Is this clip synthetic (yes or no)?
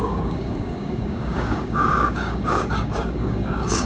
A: yes